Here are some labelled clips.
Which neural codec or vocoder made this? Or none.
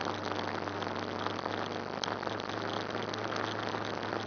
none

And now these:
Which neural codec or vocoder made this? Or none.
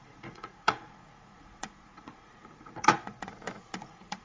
vocoder, Vocos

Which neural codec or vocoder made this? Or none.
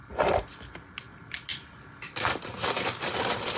none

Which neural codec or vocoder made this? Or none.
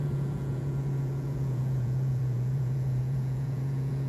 vocoder, Vocos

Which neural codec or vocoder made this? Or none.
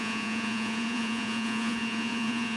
vocoder, Vocos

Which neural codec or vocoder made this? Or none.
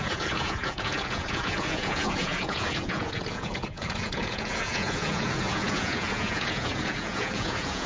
vocoder, Vocos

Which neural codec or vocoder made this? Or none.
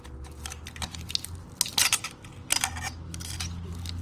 none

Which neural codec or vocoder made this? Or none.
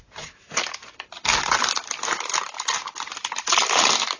none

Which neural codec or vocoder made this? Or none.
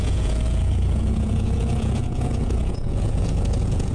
vocoder, Vocos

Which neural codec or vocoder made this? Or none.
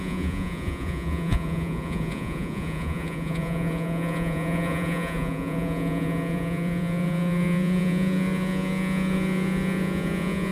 vocoder, Vocos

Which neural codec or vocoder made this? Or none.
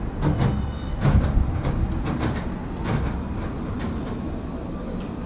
none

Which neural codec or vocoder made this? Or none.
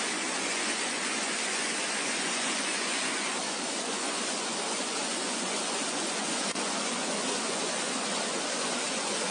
vocoder, Vocos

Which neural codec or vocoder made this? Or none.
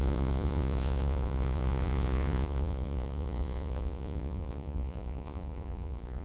vocoder, Vocos